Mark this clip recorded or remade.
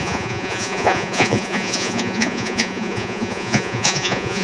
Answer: remade